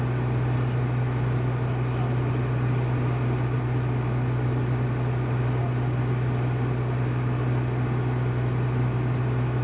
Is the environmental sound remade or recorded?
recorded